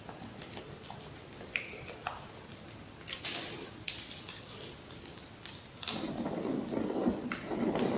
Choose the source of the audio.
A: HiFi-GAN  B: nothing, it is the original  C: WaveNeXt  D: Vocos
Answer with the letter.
B